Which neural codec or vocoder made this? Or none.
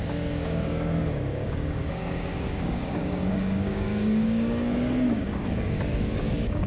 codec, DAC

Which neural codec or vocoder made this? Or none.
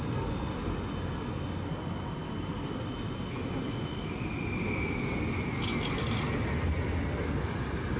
none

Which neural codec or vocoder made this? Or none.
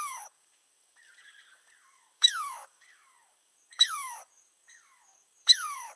codec, DAC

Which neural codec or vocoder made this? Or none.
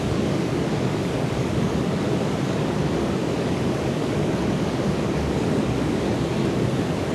codec, DAC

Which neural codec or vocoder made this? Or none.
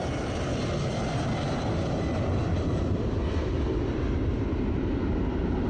none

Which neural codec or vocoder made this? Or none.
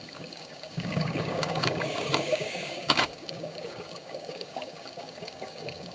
codec, DAC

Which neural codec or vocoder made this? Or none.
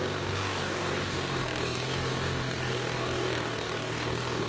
codec, DAC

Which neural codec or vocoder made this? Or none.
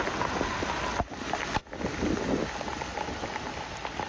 none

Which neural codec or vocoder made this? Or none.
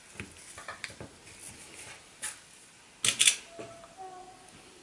none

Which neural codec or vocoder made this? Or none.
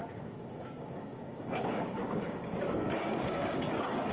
codec, DAC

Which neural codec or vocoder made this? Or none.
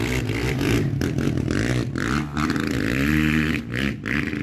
none